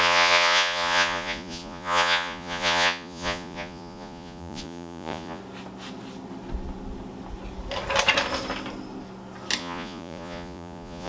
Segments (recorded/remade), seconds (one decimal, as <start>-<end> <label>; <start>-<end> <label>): 0.0-5.4 remade; 5.4-9.6 recorded; 9.6-11.1 remade

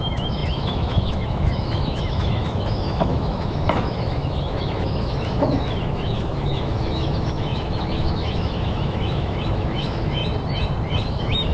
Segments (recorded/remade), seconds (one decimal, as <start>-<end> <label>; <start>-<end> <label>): 0.0-10.2 remade; 10.2-11.0 recorded; 11.0-11.5 remade

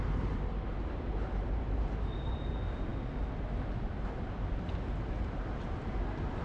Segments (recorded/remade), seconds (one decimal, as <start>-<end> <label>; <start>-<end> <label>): 0.0-2.9 remade; 2.9-5.2 recorded; 5.2-6.4 remade

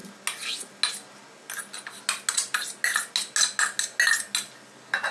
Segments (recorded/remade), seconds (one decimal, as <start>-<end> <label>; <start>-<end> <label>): 0.0-5.1 recorded

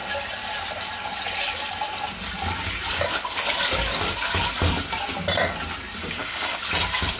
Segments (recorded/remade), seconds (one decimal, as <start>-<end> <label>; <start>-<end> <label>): 0.0-6.0 recorded; 6.0-6.6 remade; 6.6-7.2 recorded

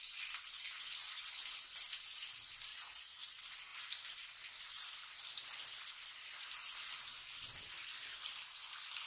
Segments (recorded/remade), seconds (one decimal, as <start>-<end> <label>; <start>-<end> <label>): 0.0-2.7 recorded; 2.7-3.2 remade; 3.2-9.1 recorded

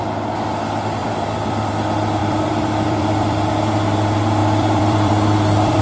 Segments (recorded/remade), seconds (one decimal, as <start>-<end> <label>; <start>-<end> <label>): 0.0-1.0 recorded; 1.0-1.7 remade; 1.7-2.2 recorded; 2.2-3.5 remade; 3.5-4.4 recorded; 4.4-5.8 remade